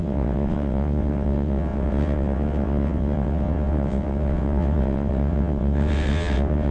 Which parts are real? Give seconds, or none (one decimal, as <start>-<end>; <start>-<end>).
none